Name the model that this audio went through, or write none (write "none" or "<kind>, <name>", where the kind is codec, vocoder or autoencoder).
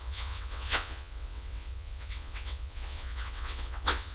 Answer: vocoder, WaveNeXt